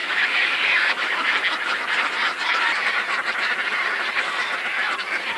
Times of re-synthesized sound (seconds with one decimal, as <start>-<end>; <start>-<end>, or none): 0.0-1.3